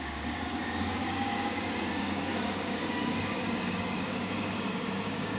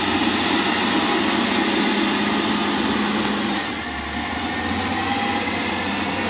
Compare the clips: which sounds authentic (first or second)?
second